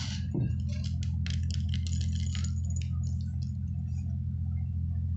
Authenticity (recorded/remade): recorded